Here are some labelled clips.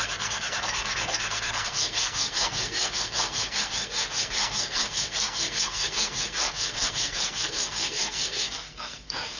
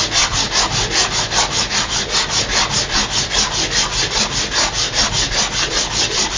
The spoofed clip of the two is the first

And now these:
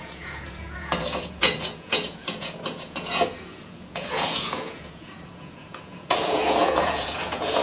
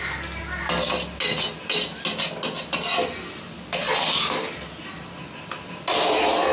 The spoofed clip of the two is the first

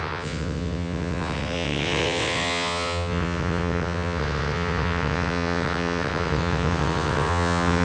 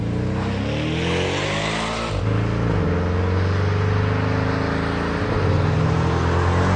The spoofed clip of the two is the first